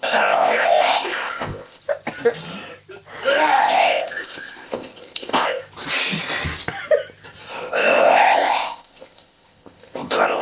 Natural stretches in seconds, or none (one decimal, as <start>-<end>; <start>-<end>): 1.8-3.6; 5.6-7.5